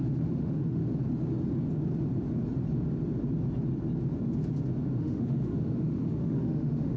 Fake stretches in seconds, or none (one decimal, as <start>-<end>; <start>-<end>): 0.0-0.8; 5.0-7.0